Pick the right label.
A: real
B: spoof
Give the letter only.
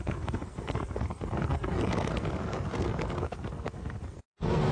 B